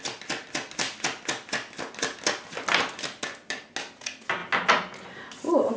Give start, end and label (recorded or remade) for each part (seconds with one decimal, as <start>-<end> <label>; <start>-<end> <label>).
0.0-5.8 recorded